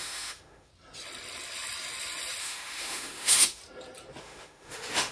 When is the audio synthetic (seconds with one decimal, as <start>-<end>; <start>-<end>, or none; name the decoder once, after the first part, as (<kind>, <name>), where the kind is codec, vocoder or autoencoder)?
0.0-0.7 (autoencoder, DAC-VAE); 2.4-3.6; 4.2-5.1

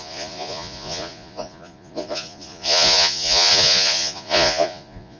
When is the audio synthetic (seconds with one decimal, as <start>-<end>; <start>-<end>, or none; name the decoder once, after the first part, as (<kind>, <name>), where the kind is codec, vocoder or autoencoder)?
0.0-5.2 (vocoder, Vocos)

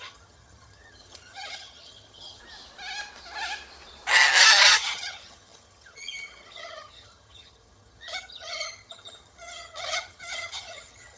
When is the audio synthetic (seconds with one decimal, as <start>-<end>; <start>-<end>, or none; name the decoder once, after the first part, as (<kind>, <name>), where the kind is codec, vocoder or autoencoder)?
0.0-2.4 (vocoder, HiFi-GAN); 4.7-11.2

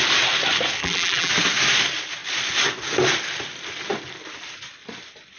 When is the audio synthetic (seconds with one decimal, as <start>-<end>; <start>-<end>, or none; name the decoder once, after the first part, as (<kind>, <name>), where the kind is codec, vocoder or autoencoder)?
0.8-1.3 (vocoder, BigVGAN v2)